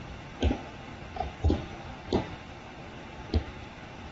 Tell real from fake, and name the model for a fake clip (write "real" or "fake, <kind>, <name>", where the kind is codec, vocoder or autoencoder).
real